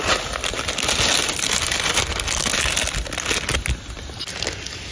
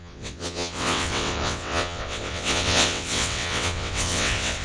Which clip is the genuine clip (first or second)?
first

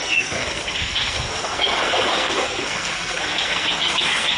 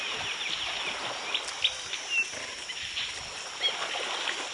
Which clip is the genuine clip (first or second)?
second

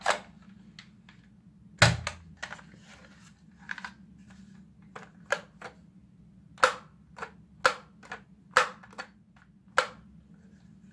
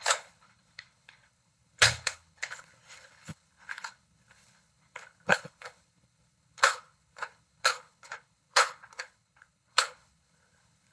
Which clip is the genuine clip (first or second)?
first